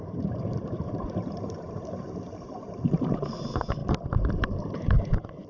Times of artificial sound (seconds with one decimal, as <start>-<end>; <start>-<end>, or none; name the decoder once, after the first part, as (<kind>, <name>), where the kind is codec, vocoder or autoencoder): 0.0-3.8 (vocoder, BigVGAN v2); 4.4-5.5